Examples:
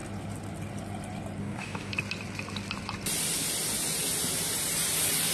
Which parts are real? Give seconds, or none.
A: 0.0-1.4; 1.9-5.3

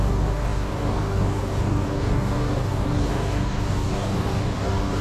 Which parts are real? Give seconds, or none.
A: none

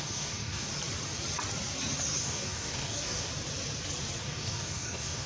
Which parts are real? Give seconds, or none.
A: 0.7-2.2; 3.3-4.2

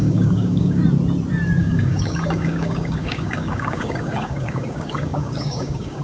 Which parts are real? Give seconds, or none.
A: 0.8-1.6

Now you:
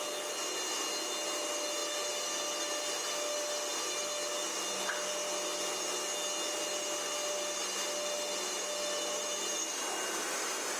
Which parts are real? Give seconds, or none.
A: 0.0-10.8

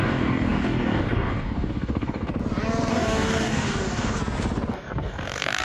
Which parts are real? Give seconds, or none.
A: 2.3-2.9; 4.2-4.7